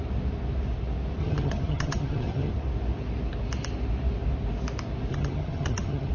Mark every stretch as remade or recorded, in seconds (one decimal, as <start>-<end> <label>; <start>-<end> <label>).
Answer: 0.0-1.2 recorded; 1.2-2.5 remade; 2.5-5.1 recorded; 5.1-6.1 remade